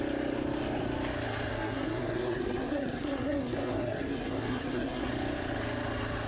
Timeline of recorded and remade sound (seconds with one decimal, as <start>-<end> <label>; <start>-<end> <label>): 0.0-1.5 recorded; 1.5-5.1 remade; 5.1-6.3 recorded